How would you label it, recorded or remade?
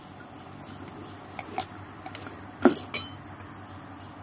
recorded